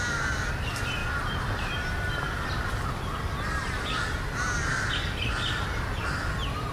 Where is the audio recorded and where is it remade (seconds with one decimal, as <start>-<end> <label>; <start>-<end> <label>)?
0.0-6.7 recorded